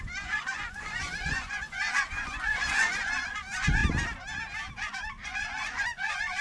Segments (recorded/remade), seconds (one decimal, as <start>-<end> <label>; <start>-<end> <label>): 0.0-3.8 remade; 3.8-4.7 recorded; 4.7-6.4 remade